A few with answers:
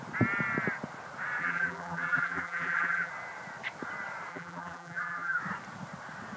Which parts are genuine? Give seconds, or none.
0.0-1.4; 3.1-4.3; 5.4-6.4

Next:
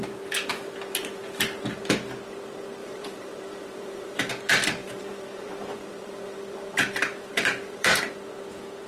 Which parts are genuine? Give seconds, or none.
0.0-2.8; 4.3-4.8; 8.0-8.9

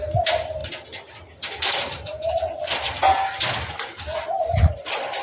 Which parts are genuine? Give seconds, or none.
0.0-5.2

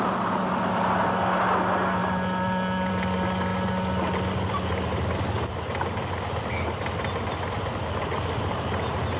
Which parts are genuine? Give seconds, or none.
0.0-9.2

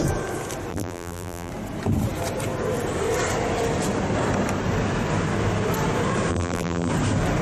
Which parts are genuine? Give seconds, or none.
0.0-0.7; 1.5-6.3; 6.9-7.4

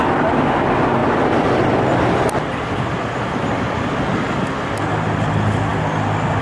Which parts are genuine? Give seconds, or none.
0.0-6.4